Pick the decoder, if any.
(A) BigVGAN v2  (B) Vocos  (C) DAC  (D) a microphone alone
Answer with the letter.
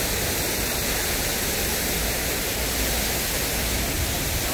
D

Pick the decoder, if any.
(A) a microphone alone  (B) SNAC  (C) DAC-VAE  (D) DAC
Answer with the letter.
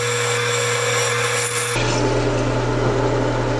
A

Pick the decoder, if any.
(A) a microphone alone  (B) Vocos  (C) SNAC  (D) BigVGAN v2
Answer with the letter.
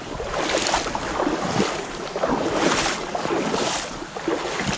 A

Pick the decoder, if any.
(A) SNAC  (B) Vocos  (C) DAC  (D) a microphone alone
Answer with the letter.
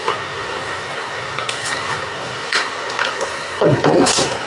A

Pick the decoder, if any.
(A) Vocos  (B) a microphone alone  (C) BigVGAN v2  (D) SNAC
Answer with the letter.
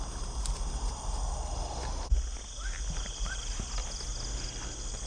B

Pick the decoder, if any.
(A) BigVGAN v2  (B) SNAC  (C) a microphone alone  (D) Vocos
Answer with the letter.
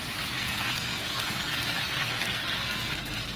B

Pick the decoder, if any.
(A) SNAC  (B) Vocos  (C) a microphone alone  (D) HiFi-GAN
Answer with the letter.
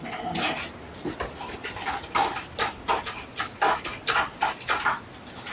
C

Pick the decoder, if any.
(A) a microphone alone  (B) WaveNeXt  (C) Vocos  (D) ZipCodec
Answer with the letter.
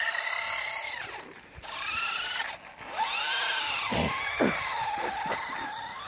A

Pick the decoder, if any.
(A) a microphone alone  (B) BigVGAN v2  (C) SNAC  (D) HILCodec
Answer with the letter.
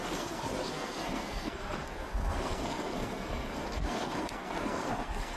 C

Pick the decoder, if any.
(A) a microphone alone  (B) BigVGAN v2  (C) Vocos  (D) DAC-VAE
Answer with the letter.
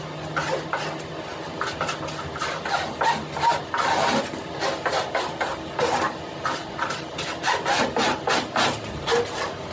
A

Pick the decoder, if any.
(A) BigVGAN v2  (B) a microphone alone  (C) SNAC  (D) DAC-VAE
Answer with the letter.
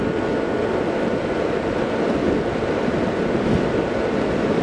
B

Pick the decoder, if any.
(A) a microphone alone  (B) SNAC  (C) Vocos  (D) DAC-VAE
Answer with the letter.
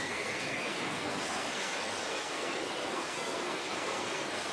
B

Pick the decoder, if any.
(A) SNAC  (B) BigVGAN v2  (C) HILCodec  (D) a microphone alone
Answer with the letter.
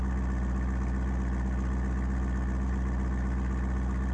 D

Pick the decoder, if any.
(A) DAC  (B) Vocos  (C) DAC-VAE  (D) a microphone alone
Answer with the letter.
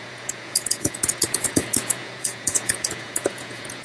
B